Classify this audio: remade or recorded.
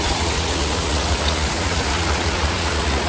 remade